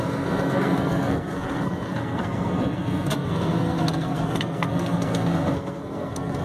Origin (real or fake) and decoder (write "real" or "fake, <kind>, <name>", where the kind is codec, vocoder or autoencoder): fake, codec, SNAC